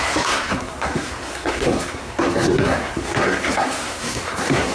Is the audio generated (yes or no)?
yes